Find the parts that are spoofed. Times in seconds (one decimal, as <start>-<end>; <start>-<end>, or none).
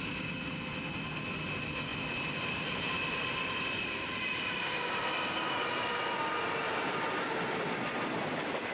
1.9-5.9